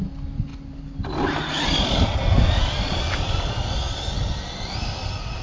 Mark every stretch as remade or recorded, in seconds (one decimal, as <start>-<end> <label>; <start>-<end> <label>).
0.0-5.4 recorded